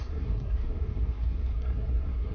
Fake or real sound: fake